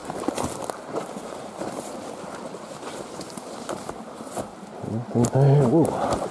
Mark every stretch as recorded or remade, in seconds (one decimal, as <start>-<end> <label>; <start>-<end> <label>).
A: 0.0-6.3 recorded